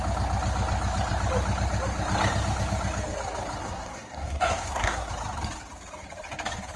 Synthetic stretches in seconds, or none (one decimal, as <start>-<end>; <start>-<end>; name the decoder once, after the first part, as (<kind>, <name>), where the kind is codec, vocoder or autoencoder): 3.6-5.1 (codec, SNAC)

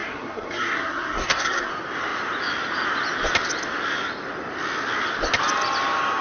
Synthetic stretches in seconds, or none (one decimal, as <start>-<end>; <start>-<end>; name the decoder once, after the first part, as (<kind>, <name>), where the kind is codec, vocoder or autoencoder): 0.0-1.7 (codec, SNAC)

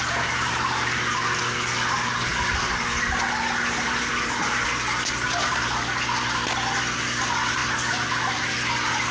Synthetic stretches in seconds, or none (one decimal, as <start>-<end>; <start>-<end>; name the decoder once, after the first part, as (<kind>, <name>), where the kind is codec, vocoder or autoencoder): none

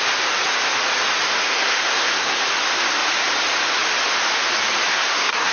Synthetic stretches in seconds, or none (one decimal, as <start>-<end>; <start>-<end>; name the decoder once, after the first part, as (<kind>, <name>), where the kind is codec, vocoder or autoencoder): 1.4-2.4 (codec, SNAC); 4.9-5.5

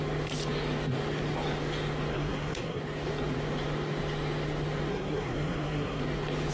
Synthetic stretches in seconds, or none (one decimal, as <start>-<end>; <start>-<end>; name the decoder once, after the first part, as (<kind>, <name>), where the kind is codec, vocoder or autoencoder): 2.1-2.8 (codec, SNAC); 4.9-6.0

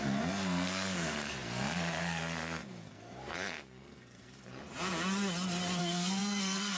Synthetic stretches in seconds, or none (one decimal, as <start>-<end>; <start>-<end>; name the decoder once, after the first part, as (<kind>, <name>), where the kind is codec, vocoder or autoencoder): 0.0-4.5 (codec, SNAC); 5.8-6.8

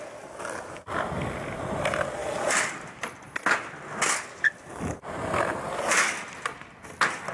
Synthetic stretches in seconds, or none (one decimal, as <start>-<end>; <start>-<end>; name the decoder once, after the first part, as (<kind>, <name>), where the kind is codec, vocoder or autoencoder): none